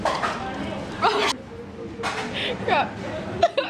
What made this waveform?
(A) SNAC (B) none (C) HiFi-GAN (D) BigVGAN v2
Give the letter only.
B